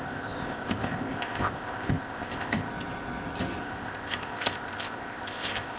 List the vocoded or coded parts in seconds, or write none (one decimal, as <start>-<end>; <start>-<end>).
0.0-2.7; 3.6-5.8